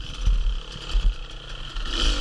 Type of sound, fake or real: real